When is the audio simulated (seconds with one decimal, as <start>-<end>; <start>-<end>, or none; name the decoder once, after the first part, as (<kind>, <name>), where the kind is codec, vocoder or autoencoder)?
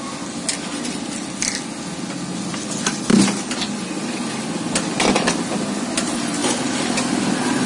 6.4-7.1 (vocoder, BigVGAN v2)